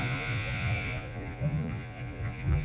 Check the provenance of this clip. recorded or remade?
remade